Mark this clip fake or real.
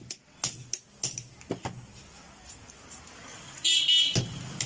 real